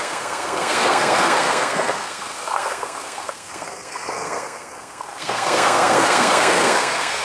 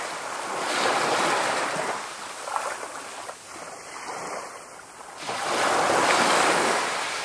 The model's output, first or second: first